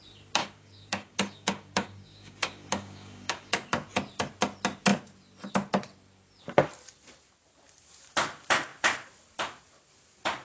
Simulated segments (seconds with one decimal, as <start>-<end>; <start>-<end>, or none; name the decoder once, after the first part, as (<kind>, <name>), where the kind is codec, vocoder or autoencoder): 0.4-3.7 (codec, DAC)

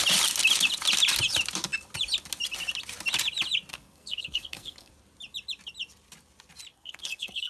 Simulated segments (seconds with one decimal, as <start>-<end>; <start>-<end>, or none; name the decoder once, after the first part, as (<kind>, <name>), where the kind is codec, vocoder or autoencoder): 3.7-4.9 (codec, SNAC); 6.7-7.5

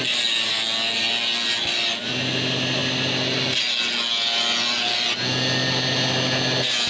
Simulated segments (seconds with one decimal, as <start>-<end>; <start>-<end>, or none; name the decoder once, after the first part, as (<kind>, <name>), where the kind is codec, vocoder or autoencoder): none

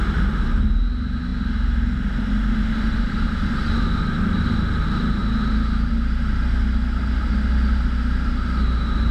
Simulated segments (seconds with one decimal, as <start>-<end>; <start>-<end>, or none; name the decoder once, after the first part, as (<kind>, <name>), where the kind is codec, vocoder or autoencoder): none

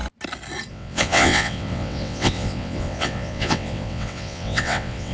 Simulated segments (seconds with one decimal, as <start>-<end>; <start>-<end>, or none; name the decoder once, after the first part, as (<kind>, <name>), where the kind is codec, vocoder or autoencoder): 0.7-5.1 (vocoder, WaveNeXt)